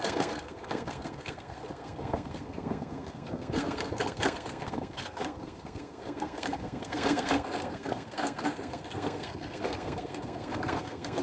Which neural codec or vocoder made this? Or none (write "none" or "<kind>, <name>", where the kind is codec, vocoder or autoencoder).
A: codec, SNAC